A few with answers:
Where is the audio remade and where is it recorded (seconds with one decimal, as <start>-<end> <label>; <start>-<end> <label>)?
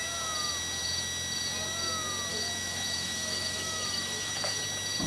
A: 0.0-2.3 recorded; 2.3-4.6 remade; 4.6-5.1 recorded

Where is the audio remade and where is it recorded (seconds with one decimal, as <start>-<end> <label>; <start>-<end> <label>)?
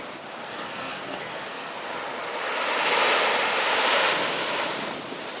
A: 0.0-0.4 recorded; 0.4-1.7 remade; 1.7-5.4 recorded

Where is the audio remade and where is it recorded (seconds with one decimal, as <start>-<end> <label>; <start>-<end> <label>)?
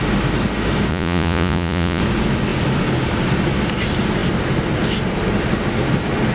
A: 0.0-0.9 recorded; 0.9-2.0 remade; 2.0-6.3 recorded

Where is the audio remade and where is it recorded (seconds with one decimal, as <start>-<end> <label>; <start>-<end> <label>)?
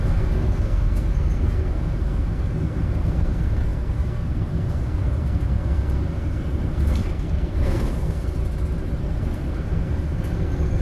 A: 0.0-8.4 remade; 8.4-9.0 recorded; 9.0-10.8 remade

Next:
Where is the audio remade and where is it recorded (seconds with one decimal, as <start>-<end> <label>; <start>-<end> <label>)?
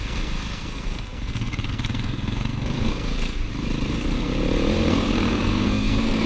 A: 0.0-3.4 remade; 3.4-3.9 recorded; 3.9-4.3 remade; 4.3-4.9 recorded; 4.9-6.3 remade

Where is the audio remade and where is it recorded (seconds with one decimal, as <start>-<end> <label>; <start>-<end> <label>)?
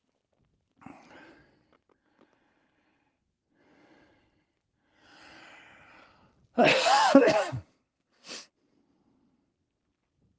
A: 0.0-6.7 recorded; 6.7-8.5 remade; 8.5-10.4 recorded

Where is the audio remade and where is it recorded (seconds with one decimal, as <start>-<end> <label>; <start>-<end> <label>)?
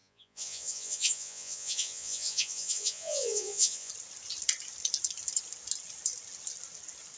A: 0.0-3.9 remade; 3.9-7.2 recorded